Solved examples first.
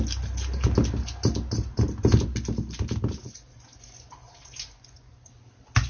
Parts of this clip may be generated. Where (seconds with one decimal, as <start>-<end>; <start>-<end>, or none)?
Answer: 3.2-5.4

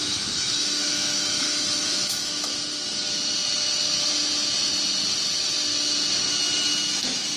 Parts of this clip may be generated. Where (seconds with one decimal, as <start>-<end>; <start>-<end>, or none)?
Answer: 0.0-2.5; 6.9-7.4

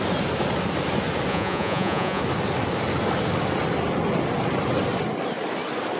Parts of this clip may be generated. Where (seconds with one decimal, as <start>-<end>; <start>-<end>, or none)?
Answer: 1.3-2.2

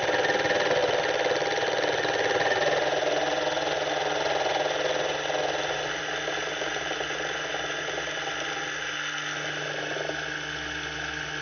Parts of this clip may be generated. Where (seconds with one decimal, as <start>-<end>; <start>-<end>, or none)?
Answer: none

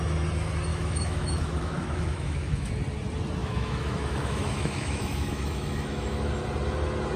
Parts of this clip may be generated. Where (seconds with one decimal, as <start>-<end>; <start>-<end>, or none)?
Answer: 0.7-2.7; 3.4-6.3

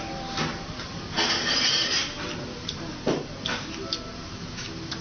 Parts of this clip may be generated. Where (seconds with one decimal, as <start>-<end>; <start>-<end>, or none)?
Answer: none